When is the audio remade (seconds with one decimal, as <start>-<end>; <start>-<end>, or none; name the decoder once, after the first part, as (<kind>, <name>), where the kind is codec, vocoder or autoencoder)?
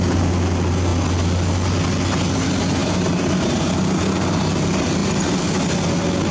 2.8-3.6 (vocoder, BigVGAN v2)